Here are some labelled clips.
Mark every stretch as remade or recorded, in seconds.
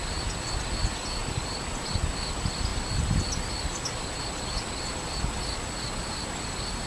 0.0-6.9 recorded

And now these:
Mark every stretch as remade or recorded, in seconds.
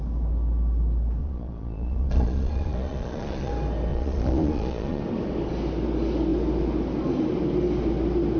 0.0-1.2 recorded; 1.2-3.5 remade; 3.5-3.9 recorded; 3.9-5.0 remade; 5.0-8.4 recorded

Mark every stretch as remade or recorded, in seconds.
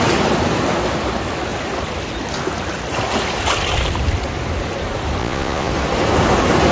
0.0-5.2 recorded; 5.2-5.7 remade; 5.7-6.7 recorded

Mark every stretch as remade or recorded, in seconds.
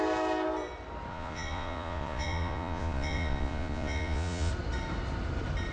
0.0-1.1 recorded; 1.1-4.5 remade; 4.5-5.7 recorded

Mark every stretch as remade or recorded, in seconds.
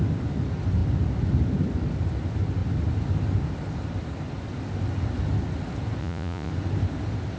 0.0-6.0 recorded; 6.0-6.5 remade; 6.5-7.4 recorded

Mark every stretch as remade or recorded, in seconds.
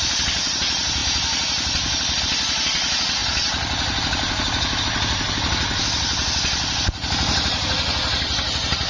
0.0-8.9 recorded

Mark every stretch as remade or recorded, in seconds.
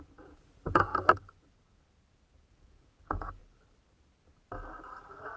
0.0-0.9 remade; 0.9-2.5 recorded; 2.5-3.4 remade; 3.4-5.4 recorded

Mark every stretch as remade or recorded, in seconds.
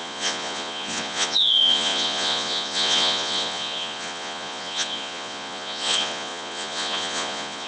0.0-7.7 remade